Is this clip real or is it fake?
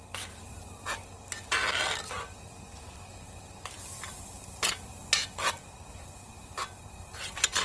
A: real